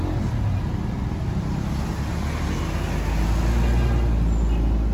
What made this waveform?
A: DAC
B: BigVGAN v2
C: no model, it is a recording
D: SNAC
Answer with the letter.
C